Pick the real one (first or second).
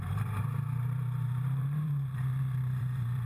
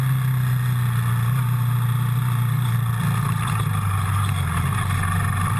second